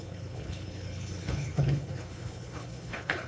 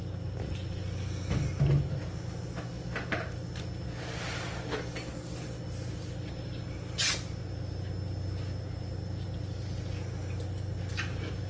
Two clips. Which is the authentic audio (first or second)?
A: second